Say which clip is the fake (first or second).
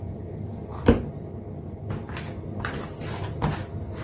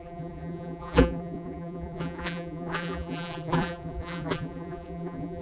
second